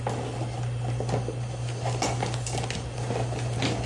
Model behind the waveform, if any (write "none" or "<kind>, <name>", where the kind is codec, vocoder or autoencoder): none